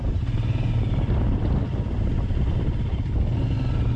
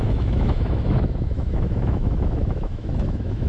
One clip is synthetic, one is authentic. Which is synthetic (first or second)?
second